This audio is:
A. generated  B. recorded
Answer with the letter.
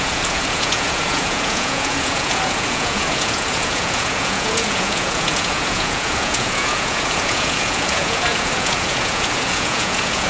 A